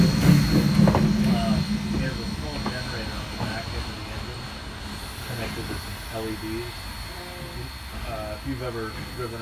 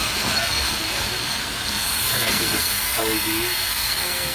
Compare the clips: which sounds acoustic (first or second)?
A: first